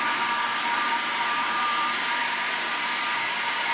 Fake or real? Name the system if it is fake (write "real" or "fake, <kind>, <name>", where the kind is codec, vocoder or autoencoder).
fake, vocoder, BigVGAN v2